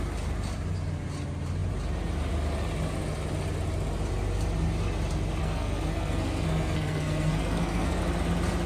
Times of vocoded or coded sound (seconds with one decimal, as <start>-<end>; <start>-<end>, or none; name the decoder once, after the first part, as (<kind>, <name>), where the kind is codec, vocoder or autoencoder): 5.4-8.0 (codec, SNAC)